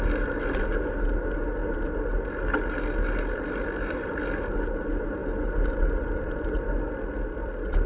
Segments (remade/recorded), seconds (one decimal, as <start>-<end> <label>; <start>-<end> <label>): 0.0-7.9 recorded